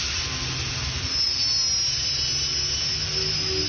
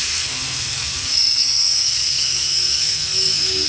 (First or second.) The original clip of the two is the first